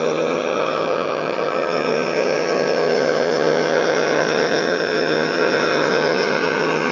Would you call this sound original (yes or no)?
no